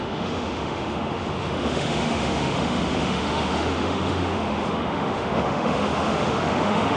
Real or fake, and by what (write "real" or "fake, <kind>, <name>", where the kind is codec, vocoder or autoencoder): fake, autoencoder, DAC-VAE